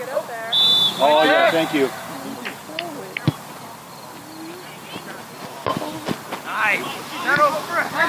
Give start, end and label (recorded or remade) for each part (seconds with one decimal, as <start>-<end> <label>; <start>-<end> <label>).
0.0-1.4 recorded; 1.4-2.1 remade; 2.1-8.1 recorded